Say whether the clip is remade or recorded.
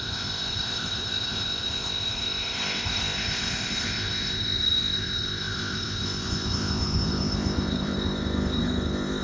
remade